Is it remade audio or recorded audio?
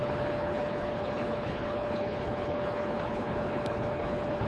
remade